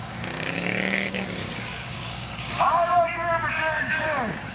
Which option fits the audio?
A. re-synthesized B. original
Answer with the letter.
A